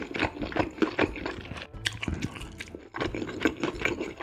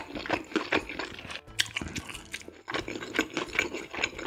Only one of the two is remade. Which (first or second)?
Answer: first